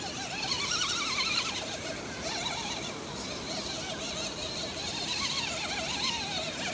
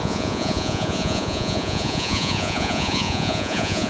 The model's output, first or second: second